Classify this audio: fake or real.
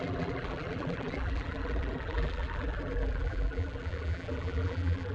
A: fake